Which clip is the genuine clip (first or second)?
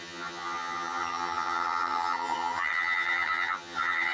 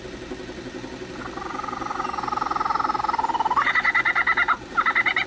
second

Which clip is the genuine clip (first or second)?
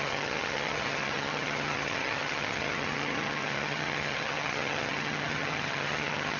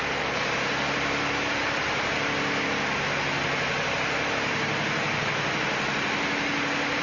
second